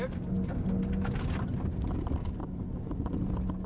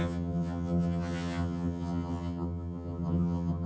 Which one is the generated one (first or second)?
second